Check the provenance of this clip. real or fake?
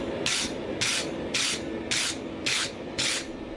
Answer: real